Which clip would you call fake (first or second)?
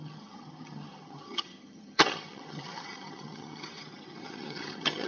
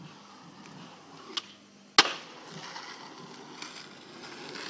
first